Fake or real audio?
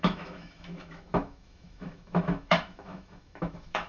fake